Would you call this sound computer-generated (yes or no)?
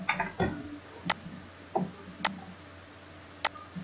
no